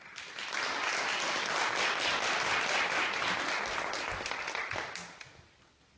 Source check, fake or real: real